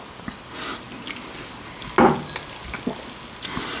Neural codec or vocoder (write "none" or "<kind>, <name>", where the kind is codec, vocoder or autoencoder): none